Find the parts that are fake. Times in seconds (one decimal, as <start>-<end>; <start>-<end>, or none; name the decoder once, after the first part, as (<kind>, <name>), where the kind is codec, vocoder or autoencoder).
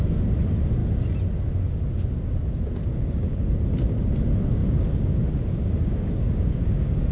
2.8-3.5 (codec, DAC); 4.6-7.1